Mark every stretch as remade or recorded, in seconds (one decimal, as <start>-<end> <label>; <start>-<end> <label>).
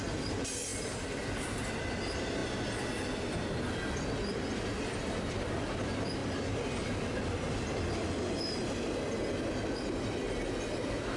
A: 0.0-11.2 recorded